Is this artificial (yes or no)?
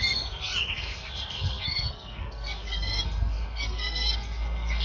yes